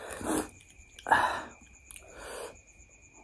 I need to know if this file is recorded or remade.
recorded